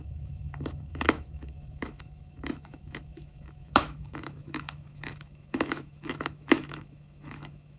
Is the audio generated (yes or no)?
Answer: yes